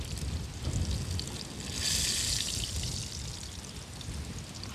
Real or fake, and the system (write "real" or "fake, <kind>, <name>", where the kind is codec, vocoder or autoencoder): real